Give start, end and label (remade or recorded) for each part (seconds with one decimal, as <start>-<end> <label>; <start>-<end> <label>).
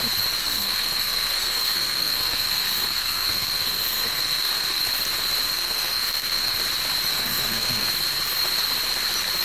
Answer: 0.0-0.4 recorded; 0.4-4.8 remade; 4.8-5.5 recorded; 5.5-6.6 remade; 6.6-7.1 recorded; 7.1-7.9 remade; 7.9-9.4 recorded